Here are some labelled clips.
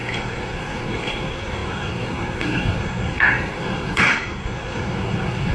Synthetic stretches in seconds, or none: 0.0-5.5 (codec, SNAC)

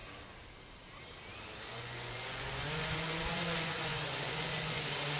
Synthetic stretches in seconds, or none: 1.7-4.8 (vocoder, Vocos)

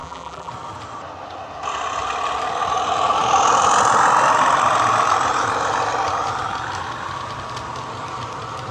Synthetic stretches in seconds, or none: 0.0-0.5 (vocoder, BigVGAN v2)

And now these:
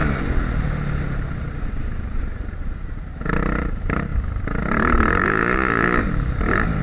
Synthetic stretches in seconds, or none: 1.0-4.1 (vocoder, BigVGAN v2); 4.6-6.8